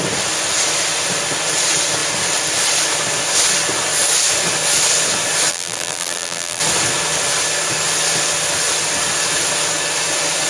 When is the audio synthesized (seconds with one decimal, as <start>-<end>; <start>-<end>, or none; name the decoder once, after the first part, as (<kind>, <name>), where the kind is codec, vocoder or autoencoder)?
5.5-6.6 (vocoder, BigVGAN v2)